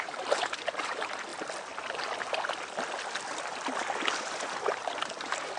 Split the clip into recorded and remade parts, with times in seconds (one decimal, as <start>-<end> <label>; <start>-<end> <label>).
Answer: 0.0-1.3 remade; 1.3-4.2 recorded; 4.2-5.6 remade